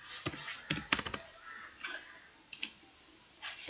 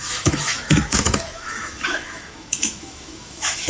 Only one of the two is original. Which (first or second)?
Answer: first